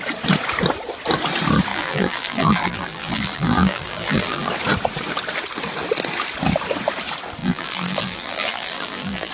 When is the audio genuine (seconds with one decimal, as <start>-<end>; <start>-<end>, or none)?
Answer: 0.0-1.7; 4.5-7.4